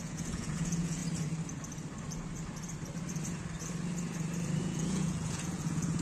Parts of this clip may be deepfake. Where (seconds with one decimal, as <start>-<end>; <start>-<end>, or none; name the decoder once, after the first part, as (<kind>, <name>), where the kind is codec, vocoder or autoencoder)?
0.0-1.0 (vocoder, Vocos); 4.6-6.0